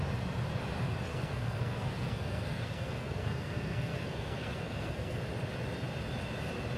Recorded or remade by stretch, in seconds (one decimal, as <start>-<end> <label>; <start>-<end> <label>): 0.0-1.1 recorded; 1.1-5.2 remade; 5.2-6.8 recorded